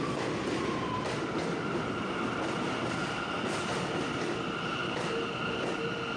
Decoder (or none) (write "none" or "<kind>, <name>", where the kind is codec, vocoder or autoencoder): vocoder, BigVGAN v2